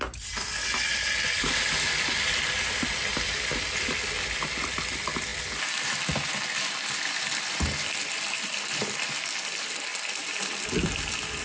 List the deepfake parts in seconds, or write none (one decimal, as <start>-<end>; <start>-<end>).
none